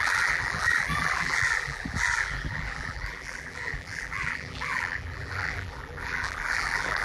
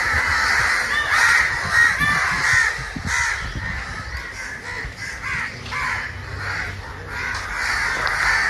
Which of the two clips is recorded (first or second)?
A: second